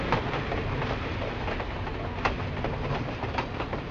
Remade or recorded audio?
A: recorded